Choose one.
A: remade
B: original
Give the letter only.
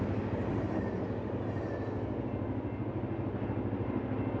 B